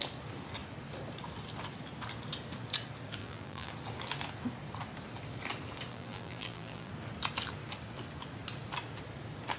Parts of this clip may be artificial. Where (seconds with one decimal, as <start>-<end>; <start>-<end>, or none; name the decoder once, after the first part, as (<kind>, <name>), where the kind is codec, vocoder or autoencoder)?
3.2-3.7 (vocoder, BigVGAN v2); 5.9-6.9